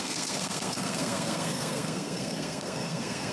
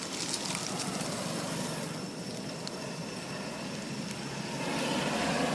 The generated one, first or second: first